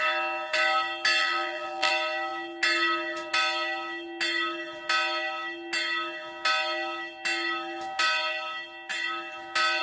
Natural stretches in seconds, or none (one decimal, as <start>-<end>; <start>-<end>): 0.0-1.2; 1.9-9.8

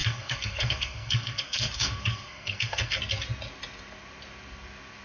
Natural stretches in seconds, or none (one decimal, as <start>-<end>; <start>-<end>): 3.0-5.0

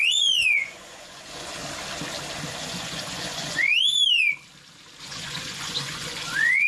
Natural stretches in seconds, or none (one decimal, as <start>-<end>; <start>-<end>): 1.6-2.5; 3.7-5.0

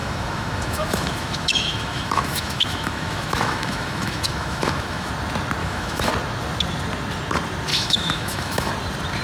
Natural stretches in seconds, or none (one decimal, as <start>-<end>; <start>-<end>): 5.1-5.6; 6.1-7.7; 8.7-9.2

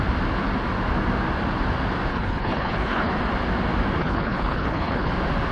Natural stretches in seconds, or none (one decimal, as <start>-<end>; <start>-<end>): 0.0-2.1; 3.1-4.0; 5.1-5.5

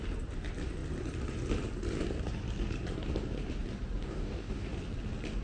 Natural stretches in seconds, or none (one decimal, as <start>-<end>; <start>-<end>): 0.0-4.0; 4.7-5.4

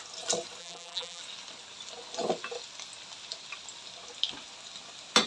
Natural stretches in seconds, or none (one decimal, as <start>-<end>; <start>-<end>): 0.0-0.6; 1.2-5.3

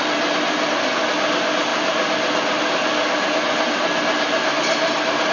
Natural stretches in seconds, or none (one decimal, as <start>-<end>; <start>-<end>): 0.0-5.3